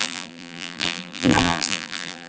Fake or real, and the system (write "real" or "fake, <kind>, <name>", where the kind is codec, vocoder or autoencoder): fake, vocoder, BigVGAN v2